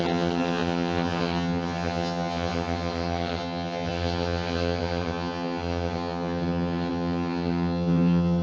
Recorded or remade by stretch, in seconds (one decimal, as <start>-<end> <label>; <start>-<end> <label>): 0.0-8.4 remade